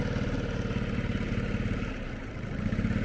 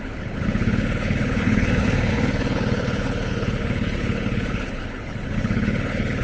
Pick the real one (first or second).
first